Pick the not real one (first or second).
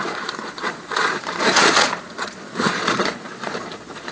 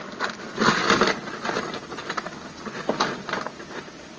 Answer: first